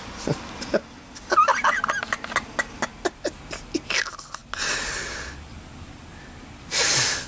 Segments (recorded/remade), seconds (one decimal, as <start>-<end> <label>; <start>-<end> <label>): 0.0-7.3 recorded